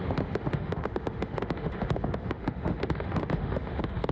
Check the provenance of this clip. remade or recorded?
remade